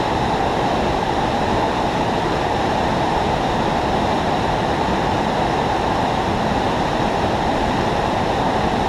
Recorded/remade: remade